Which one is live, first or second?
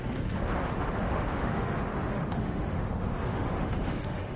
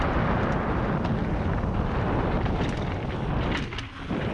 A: second